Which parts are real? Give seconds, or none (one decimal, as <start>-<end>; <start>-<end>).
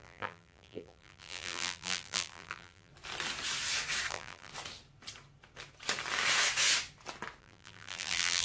2.9-4.1; 4.5-7.4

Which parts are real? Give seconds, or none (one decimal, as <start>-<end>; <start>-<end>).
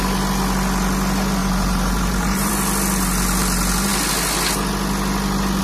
0.0-1.4; 2.5-5.6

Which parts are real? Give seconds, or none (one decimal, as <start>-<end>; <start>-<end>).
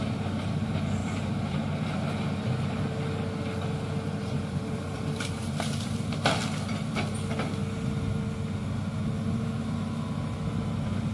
0.0-1.0; 1.6-4.2; 6.3-11.1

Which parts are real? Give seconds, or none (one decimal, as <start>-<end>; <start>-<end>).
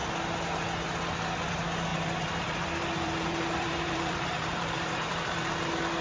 0.0-1.9; 5.1-6.0